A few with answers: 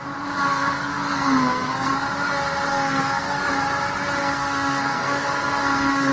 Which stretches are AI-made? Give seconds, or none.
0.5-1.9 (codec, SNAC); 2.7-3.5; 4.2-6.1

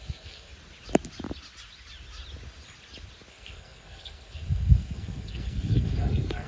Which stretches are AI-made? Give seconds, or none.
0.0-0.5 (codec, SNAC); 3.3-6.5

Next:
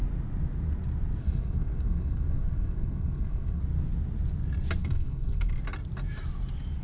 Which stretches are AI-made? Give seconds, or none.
1.2-3.6 (codec, SNAC); 4.8-5.5

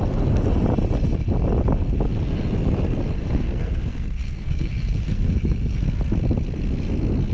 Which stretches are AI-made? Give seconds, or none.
3.2-5.8 (codec, SNAC)

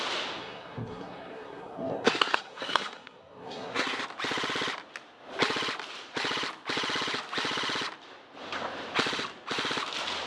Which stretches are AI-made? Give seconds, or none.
0.4-4.0 (codec, SNAC)

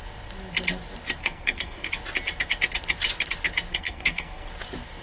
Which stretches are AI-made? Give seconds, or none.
1.2-1.9 (codec, SNAC); 3.7-4.5

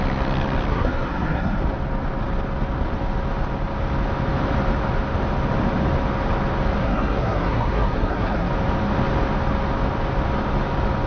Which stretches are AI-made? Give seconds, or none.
0.7-1.6 (codec, SNAC); 6.8-8.5